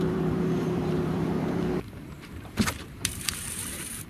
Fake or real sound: fake